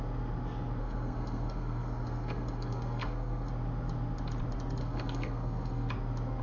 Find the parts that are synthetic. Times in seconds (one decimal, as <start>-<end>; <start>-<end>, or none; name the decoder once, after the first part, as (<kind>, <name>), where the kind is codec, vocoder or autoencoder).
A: 0.8-3.5 (codec, SNAC); 4.8-5.9